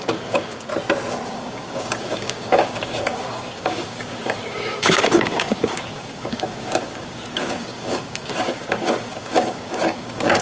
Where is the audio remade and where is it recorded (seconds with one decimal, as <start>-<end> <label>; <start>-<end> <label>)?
0.0-0.7 remade; 0.7-1.3 recorded; 1.3-10.4 remade